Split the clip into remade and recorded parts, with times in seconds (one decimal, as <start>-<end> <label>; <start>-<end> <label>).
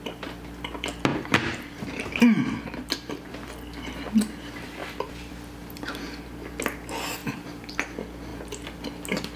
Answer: 0.0-1.1 recorded; 1.1-3.3 remade; 3.3-4.8 recorded; 4.8-6.0 remade; 6.0-7.2 recorded; 7.2-7.7 remade; 7.7-8.3 recorded; 8.3-8.9 remade; 8.9-9.4 recorded